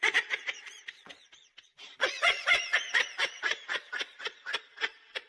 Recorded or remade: remade